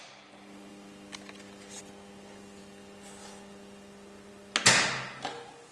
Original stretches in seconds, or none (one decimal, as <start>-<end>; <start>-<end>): 0.0-5.7